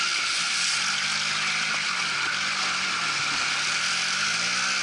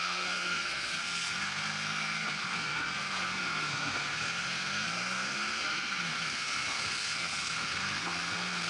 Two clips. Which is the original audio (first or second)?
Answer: first